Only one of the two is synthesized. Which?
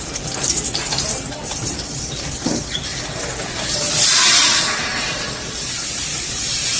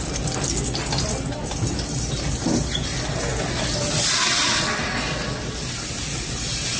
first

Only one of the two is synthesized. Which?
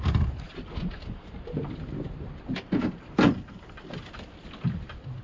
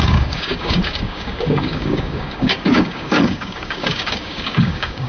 second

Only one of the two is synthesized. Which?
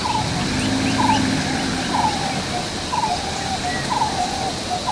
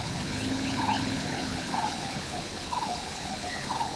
second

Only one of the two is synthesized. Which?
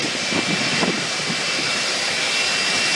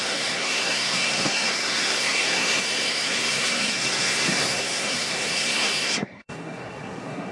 second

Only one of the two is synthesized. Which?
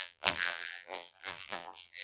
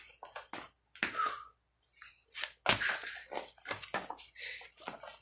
first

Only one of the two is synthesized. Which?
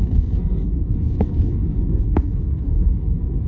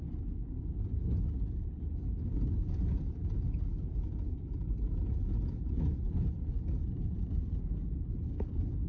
first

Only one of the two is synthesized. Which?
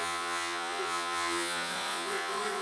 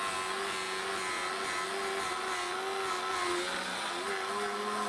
first